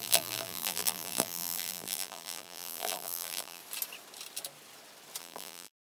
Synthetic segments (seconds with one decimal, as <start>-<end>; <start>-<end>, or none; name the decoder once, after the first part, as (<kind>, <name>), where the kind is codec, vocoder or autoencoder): 0.0-3.6 (vocoder, BigVGAN v2); 5.2-5.9